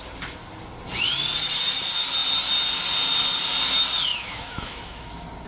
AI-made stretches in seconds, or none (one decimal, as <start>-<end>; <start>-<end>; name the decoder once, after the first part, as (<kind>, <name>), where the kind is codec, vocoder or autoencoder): 4.1-5.1 (autoencoder, DAC-VAE)